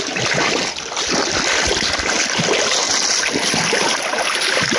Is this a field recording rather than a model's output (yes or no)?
yes